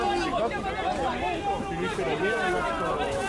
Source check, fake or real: real